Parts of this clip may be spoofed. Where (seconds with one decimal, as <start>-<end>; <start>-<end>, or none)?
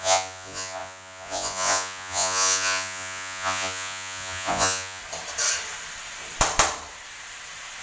0.0-5.0